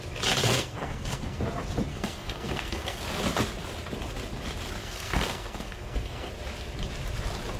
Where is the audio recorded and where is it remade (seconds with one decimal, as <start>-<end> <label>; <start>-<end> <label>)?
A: 0.0-0.4 recorded; 0.4-1.4 remade; 1.4-1.9 recorded; 1.9-3.0 remade; 3.0-4.8 recorded; 4.8-6.3 remade; 6.3-7.6 recorded